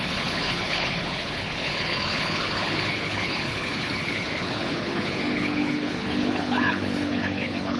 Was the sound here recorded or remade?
remade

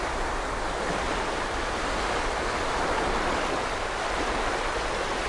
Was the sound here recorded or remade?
recorded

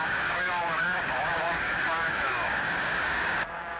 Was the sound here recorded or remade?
remade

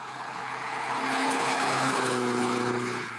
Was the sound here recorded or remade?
remade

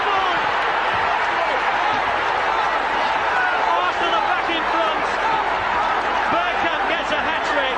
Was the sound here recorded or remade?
recorded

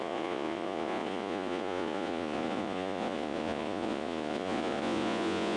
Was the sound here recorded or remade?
remade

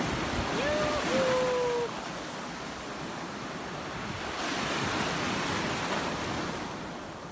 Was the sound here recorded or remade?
recorded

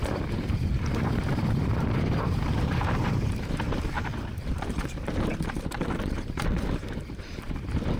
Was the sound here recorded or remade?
remade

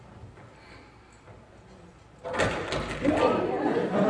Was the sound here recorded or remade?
recorded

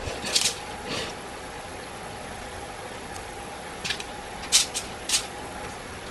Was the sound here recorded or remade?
remade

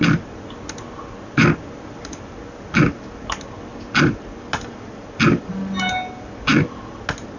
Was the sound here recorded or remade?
recorded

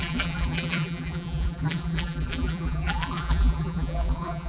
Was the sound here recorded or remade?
remade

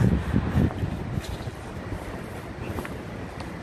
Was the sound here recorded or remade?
recorded